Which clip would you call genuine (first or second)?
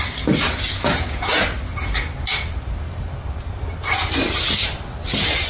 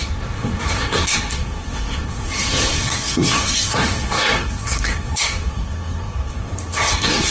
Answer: first